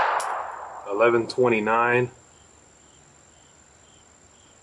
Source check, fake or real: real